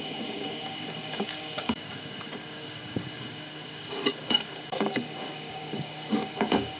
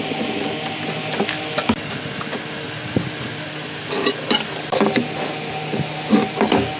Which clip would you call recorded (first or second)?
second